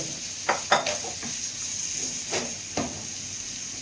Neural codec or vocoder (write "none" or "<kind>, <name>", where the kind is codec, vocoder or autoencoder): none